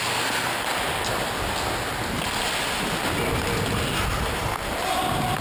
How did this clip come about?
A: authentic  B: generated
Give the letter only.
A